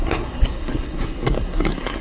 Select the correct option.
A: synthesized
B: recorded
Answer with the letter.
A